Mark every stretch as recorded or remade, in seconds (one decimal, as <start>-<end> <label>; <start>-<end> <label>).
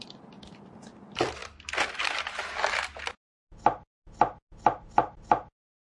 0.0-5.9 recorded